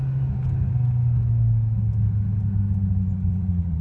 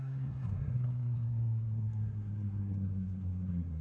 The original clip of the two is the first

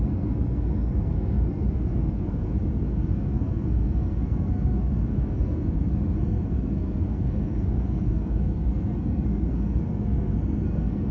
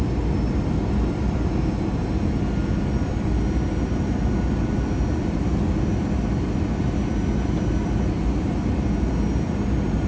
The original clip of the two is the second